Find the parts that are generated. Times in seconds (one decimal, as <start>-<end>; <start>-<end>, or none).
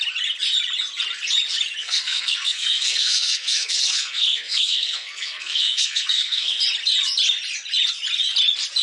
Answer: 1.8-6.6